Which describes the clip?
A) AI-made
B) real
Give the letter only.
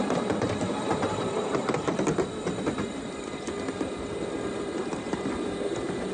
B